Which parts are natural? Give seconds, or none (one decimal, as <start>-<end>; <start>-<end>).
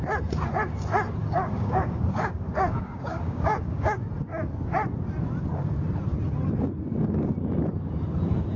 0.0-1.2; 4.0-8.6